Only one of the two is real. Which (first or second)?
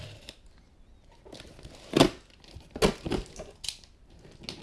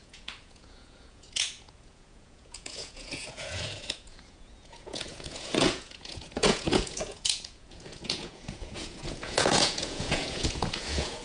first